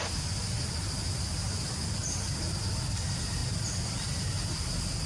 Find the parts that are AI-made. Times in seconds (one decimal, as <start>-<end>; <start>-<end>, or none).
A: none